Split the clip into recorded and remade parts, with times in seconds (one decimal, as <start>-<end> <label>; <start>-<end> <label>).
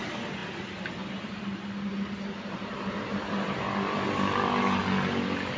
0.0-3.1 recorded; 3.1-4.8 remade; 4.8-5.6 recorded